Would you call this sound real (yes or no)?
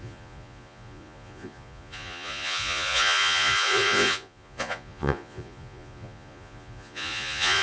no